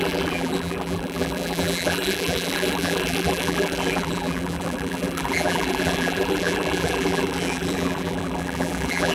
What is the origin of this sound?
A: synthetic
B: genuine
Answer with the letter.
A